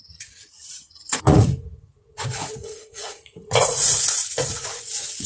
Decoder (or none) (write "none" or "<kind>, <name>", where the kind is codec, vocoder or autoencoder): vocoder, Vocos